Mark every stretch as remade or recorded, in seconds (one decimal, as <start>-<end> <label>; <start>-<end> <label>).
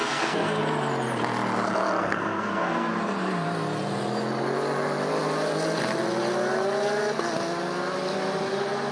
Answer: 0.0-0.6 remade; 0.6-2.0 recorded; 2.0-2.9 remade; 2.9-8.9 recorded